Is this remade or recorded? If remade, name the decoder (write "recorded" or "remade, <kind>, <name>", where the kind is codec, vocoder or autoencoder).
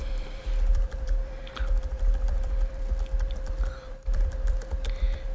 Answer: remade, vocoder, BigVGAN v2